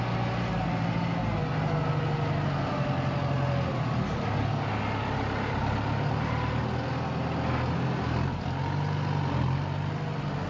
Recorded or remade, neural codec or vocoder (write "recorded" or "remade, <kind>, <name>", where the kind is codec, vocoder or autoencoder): recorded